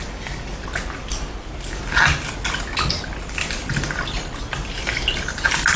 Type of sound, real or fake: real